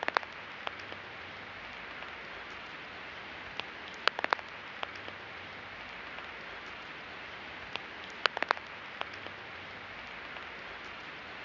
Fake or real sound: real